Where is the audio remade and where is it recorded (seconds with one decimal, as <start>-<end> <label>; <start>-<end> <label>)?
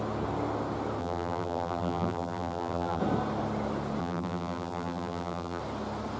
0.0-1.0 recorded; 1.0-3.0 remade; 3.0-4.0 recorded; 4.0-5.6 remade; 5.6-6.2 recorded